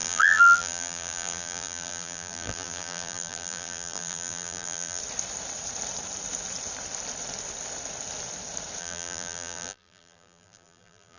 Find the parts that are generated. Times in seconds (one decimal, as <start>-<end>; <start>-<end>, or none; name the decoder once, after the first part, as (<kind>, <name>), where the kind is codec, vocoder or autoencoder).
0.0-5.0 (vocoder, BigVGAN v2); 8.8-11.2